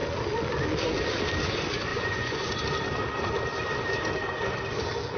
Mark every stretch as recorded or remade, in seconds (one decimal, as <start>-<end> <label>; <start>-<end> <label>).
0.0-1.9 recorded; 1.9-2.5 remade; 2.5-5.2 recorded